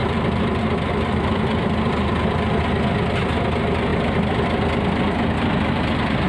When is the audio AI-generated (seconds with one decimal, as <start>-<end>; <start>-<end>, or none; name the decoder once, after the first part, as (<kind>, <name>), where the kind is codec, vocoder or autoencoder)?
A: 0.0-2.6 (vocoder, BigVGAN v2); 3.9-6.3